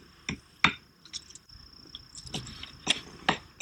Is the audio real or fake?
real